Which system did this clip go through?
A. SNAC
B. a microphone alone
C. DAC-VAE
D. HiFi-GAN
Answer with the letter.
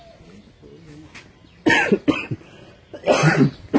B